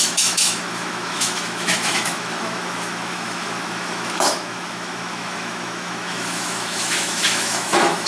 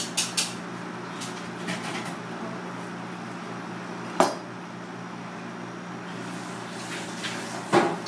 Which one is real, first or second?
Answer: second